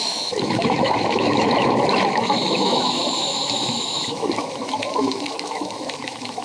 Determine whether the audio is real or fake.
fake